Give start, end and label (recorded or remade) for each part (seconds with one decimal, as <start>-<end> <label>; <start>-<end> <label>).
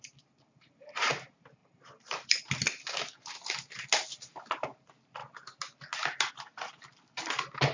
0.0-1.6 recorded; 1.6-2.4 remade; 2.4-7.7 recorded